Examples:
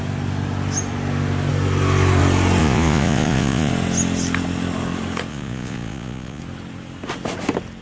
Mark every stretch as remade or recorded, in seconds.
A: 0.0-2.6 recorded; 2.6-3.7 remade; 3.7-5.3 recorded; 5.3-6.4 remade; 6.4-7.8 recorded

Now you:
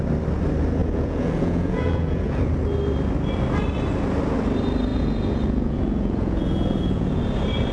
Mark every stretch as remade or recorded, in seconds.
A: 0.0-0.8 recorded; 0.8-2.5 remade; 2.5-4.9 recorded; 4.9-7.2 remade; 7.2-7.7 recorded

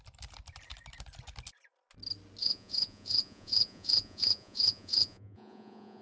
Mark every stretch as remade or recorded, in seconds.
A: 0.0-2.4 recorded; 2.4-6.0 remade

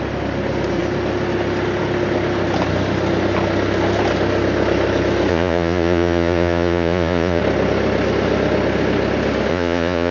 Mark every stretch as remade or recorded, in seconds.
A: 0.0-5.3 recorded; 5.3-7.4 remade; 7.4-9.5 recorded; 9.5-10.1 remade

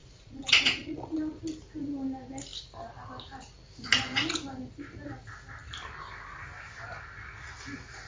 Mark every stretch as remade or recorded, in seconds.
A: 0.0-1.4 remade; 1.4-8.1 recorded